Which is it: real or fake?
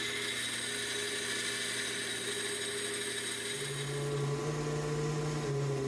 real